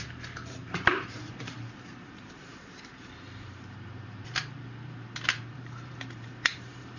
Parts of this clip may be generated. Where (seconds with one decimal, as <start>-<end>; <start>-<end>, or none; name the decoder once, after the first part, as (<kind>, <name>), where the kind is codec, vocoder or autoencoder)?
0.0-7.0 (vocoder, BigVGAN v2)